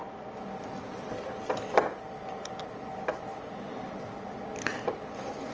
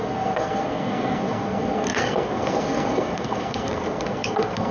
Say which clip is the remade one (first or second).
second